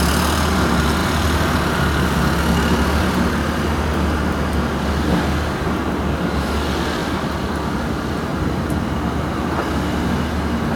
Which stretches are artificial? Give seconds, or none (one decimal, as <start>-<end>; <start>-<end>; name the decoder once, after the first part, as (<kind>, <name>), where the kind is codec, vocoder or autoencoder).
7.0-7.5 (vocoder, BigVGAN v2); 8.3-9.3